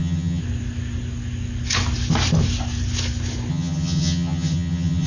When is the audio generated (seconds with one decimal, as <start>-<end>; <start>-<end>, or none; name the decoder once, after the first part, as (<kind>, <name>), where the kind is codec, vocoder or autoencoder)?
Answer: 0.0-0.4 (vocoder, HiFi-GAN); 3.5-5.1

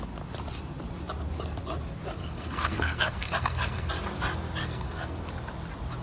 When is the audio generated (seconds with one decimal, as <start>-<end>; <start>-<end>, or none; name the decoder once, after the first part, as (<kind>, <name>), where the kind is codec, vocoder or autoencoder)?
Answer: 2.2-3.9 (codec, SNAC); 4.6-5.2